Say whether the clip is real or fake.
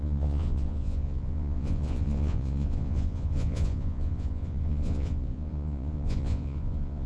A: fake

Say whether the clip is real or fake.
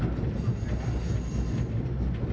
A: real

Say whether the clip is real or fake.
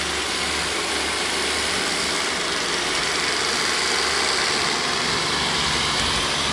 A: fake